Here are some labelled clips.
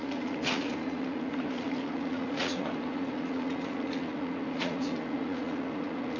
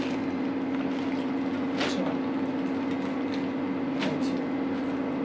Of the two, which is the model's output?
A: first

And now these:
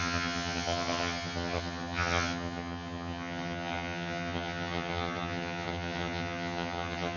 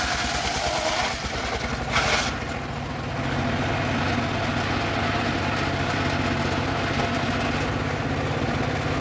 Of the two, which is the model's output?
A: first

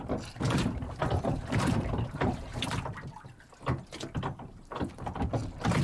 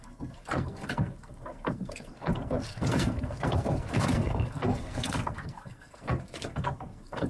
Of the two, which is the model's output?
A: second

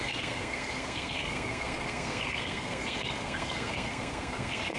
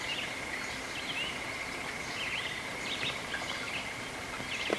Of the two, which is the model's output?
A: first